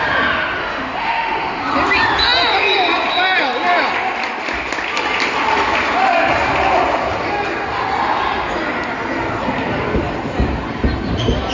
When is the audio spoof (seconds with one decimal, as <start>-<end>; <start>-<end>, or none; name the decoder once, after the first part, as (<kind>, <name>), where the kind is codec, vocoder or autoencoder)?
0.6-1.6 (autoencoder, DAC-VAE)